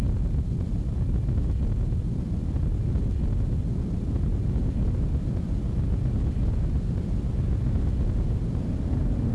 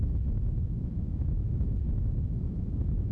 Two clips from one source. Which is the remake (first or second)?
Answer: second